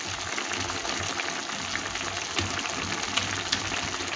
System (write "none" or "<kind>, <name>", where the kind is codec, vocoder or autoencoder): none